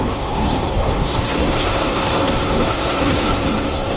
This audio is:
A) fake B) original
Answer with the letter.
A